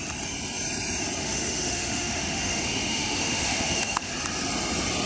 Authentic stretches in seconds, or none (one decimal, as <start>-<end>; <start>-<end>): 0.0-1.2; 4.1-5.1